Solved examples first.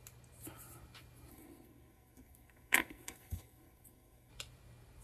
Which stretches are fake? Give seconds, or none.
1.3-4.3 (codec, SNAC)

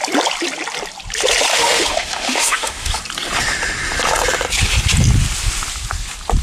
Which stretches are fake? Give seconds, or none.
1.5-2.9 (autoencoder, DAC-VAE)

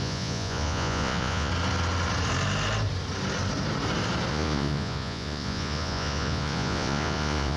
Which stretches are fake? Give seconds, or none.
0.0-1.5 (vocoder, Vocos); 4.3-7.6

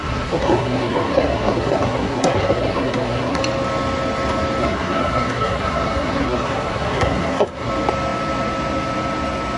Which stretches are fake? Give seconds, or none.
0.0-3.4 (codec, SNAC); 4.6-7.7